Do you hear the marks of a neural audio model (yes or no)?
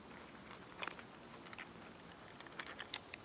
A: no